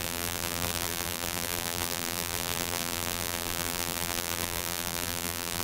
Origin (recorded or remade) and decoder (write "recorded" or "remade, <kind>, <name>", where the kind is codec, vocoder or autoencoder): remade, vocoder, BigVGAN v2